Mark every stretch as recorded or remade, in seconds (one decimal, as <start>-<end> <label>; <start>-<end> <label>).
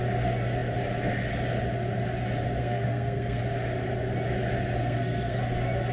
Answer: 0.0-2.6 recorded; 2.6-3.4 remade; 3.4-4.8 recorded; 4.8-5.4 remade; 5.4-5.9 recorded